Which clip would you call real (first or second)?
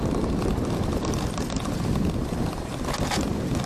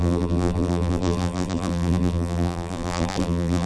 first